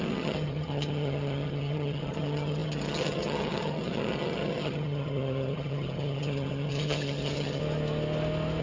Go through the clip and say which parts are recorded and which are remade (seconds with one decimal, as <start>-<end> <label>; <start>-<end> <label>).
0.0-7.6 remade; 7.6-8.6 recorded